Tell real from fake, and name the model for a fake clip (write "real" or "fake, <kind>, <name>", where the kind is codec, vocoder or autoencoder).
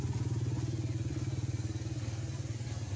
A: real